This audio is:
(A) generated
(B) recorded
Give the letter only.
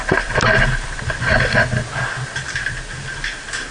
B